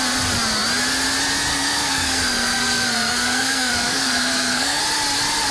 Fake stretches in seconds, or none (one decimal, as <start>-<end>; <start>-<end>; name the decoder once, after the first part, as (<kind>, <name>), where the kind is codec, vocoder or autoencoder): 1.5-4.8 (codec, SNAC)